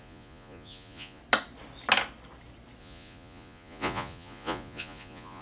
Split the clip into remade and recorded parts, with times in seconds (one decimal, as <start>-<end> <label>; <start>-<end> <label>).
0.0-1.2 remade; 1.2-2.8 recorded; 2.8-5.4 remade